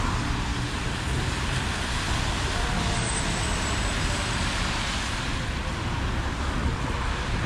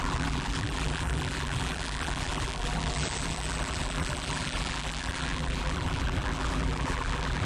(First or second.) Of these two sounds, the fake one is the second